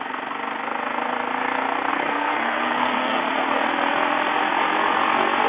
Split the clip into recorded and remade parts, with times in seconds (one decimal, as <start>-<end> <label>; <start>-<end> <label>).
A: 0.0-1.9 recorded; 1.9-3.2 remade; 3.2-5.5 recorded